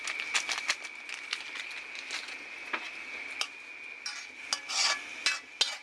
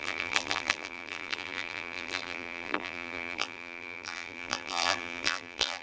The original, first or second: first